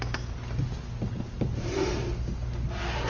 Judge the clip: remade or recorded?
recorded